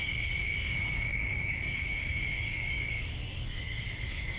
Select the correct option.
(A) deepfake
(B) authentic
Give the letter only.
A